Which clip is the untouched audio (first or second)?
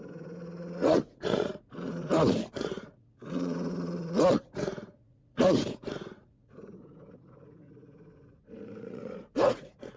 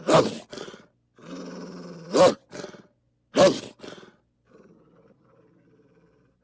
second